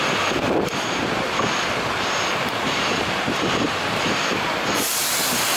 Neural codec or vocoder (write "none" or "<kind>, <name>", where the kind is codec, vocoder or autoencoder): vocoder, BigVGAN v2